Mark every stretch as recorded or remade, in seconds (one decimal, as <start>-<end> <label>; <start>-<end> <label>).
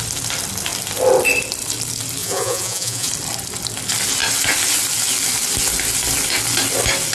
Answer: 0.0-2.2 recorded; 2.2-3.1 remade; 3.1-7.1 recorded